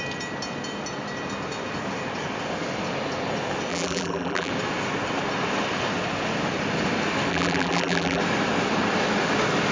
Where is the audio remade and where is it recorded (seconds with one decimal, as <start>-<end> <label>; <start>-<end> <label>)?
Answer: 0.0-3.7 recorded; 3.7-4.5 remade; 4.5-7.3 recorded; 7.3-8.2 remade; 8.2-9.7 recorded